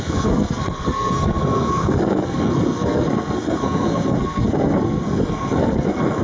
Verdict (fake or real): fake